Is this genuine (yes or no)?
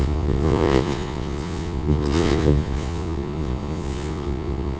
no